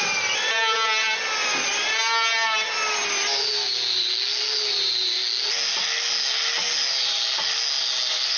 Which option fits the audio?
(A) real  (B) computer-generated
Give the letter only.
A